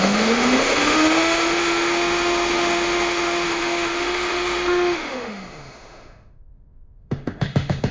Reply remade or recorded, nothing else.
remade